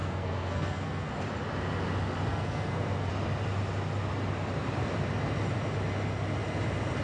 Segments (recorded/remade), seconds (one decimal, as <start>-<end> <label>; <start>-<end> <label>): 0.0-1.1 remade; 1.1-2.3 recorded; 2.3-3.1 remade; 3.1-7.0 recorded